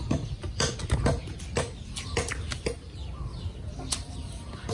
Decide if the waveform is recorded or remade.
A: recorded